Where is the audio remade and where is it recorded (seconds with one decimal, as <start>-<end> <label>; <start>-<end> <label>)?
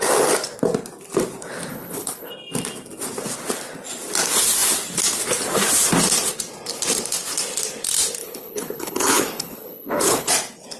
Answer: 0.0-1.7 recorded; 1.7-2.3 remade; 2.3-8.2 recorded; 8.2-10.3 remade; 10.3-10.8 recorded